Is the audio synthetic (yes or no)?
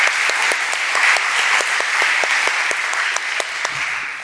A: no